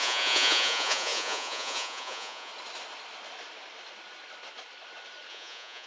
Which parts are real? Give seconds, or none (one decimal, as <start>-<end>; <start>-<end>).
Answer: 2.5-5.3